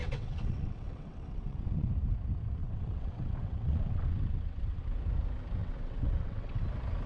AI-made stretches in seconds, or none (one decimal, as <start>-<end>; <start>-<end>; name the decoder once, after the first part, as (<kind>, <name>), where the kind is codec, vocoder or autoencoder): 0.0-1.9 (vocoder, WaveNeXt); 2.6-4.8; 5.6-6.6